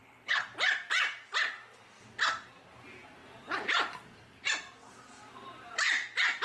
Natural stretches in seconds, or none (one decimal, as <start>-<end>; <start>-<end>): 0.5-6.4